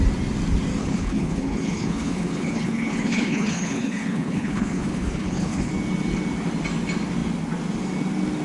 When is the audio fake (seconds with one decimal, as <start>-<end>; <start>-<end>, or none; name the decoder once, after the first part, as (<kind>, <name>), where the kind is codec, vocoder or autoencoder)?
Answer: 0.8-5.7 (codec, HILCodec)